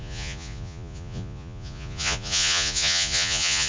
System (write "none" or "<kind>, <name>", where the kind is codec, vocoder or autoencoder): vocoder, Vocos